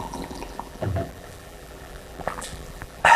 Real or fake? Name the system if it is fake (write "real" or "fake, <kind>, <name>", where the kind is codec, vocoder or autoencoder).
fake, vocoder, BigVGAN v2